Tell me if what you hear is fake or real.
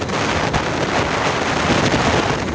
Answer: real